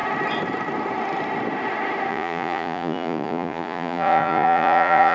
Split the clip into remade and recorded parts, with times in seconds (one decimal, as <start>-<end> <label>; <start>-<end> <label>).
0.0-2.1 recorded; 2.1-5.1 remade